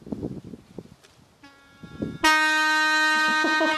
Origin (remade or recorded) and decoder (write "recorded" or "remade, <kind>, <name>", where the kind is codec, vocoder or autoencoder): recorded